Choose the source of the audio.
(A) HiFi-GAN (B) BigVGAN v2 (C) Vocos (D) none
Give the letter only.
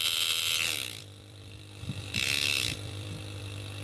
B